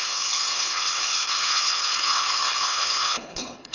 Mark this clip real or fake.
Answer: fake